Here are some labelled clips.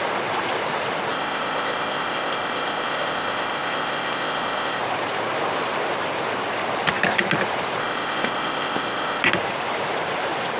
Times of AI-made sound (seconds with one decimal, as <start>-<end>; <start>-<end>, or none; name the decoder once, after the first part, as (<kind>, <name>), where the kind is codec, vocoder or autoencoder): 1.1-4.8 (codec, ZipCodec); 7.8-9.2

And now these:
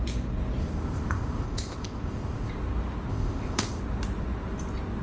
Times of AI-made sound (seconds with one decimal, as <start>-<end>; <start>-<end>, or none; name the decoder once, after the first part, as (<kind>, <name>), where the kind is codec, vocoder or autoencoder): 0.6-2.5 (codec, ZipCodec); 3.1-3.8

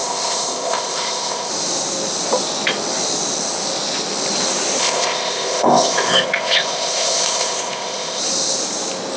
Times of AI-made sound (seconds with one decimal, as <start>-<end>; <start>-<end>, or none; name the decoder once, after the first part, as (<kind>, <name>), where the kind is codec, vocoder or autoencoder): 0.0-1.5 (codec, ZipCodec); 4.8-8.2

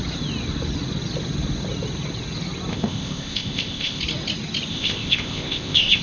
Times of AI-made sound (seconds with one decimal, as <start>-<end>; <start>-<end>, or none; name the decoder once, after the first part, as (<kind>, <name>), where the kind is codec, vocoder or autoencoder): 2.7-4.0 (codec, ZipCodec); 4.7-6.0

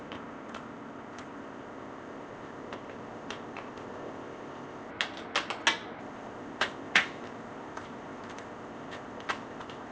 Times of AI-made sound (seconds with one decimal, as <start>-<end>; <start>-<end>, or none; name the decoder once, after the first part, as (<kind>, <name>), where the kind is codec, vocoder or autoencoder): 0.0-4.9 (codec, ZipCodec); 6.0-9.9

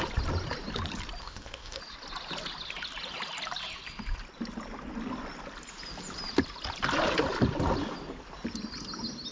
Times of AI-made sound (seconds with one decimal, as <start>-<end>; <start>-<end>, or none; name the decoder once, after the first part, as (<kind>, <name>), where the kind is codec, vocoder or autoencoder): 1.2-1.8 (codec, ZipCodec)

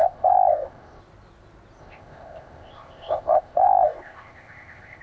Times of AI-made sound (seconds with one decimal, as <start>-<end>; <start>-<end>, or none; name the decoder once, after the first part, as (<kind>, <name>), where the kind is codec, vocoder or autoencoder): 0.0-1.0 (codec, ZipCodec); 1.8-5.0